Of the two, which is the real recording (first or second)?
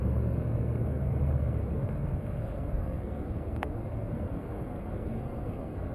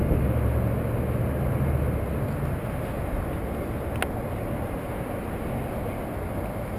second